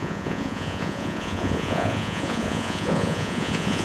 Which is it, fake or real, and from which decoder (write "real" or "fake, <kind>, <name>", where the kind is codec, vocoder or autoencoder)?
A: fake, vocoder, Vocos